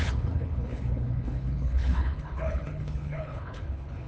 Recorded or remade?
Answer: remade